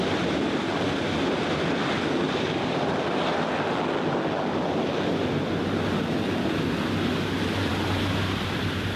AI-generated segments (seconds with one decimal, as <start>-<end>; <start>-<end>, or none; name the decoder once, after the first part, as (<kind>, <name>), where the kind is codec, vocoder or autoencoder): none